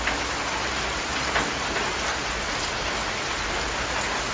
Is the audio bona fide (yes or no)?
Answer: yes